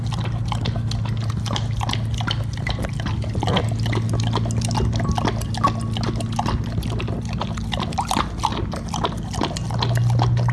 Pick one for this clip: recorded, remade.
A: recorded